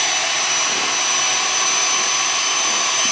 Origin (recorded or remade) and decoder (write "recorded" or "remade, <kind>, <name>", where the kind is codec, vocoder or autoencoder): recorded